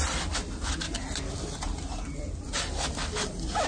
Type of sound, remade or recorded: remade